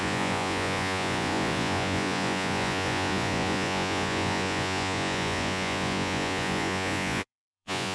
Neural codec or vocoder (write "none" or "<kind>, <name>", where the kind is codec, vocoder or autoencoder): vocoder, Vocos